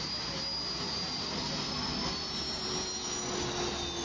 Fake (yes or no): no